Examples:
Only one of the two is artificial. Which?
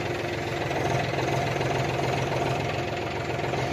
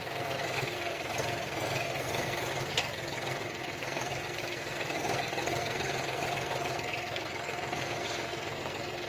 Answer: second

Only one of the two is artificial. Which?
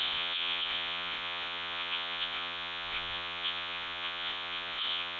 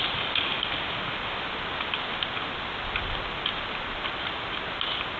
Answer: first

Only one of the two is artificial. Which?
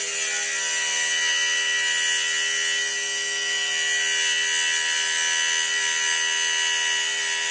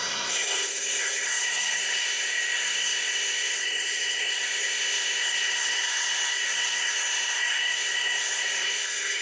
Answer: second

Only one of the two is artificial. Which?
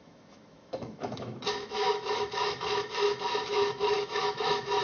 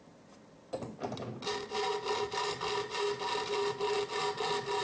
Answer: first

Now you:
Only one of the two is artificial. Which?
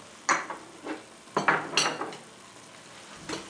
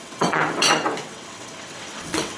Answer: second